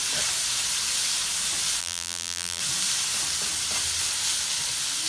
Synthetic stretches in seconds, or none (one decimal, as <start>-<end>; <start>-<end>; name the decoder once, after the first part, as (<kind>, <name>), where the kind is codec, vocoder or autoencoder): 1.8-2.6 (vocoder, BigVGAN v2)